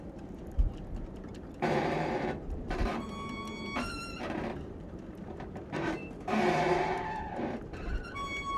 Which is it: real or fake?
fake